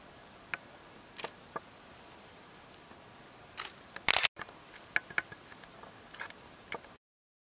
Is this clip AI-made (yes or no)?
no